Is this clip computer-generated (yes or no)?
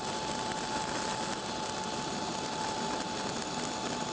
no